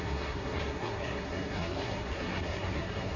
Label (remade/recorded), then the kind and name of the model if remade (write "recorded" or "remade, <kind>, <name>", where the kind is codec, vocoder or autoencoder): remade, codec, SNAC